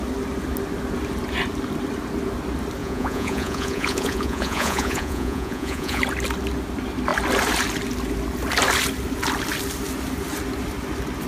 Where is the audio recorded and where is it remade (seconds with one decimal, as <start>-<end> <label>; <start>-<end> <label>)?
0.0-2.8 recorded; 2.8-6.0 remade; 6.0-11.3 recorded